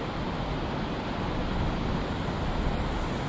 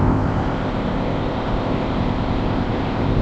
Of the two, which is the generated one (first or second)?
second